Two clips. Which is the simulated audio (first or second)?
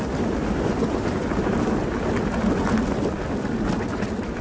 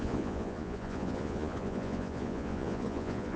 second